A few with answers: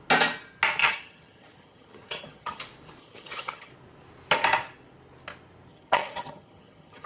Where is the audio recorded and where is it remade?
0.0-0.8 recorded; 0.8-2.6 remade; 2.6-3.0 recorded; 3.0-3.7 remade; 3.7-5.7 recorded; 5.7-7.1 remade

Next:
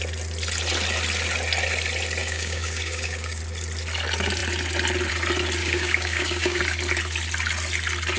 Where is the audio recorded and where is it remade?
0.0-2.2 recorded; 2.2-3.4 remade; 3.4-5.6 recorded; 5.6-6.6 remade; 6.6-8.2 recorded

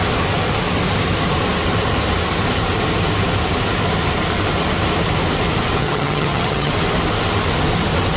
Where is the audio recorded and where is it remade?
0.0-5.8 recorded; 5.8-6.7 remade; 6.7-8.2 recorded

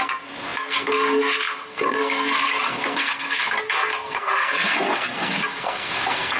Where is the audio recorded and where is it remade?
0.0-6.4 remade

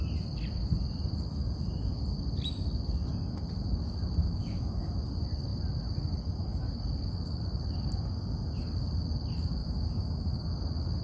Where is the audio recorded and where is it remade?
0.0-4.2 recorded; 4.2-4.8 remade; 4.8-9.6 recorded; 9.6-10.5 remade; 10.5-11.0 recorded

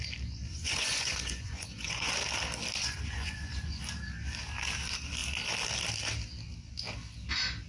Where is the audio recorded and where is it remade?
0.0-0.5 recorded; 0.5-2.1 remade; 2.1-2.8 recorded; 2.8-3.8 remade; 3.8-7.7 recorded

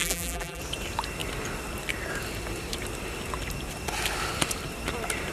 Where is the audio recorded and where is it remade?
0.0-0.6 remade; 0.6-5.3 recorded

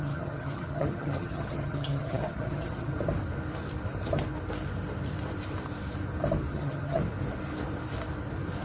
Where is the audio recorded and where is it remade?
0.0-2.9 remade; 2.9-6.5 recorded; 6.5-7.0 remade; 7.0-8.6 recorded